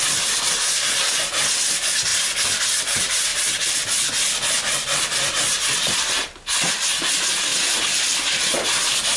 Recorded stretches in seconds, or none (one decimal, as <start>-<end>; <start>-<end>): 0.0-9.2